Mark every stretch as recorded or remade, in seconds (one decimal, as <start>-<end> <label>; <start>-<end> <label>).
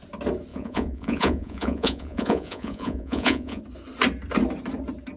0.0-0.5 recorded; 0.5-3.6 remade; 3.6-5.2 recorded